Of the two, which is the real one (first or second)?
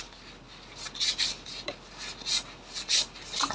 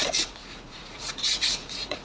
first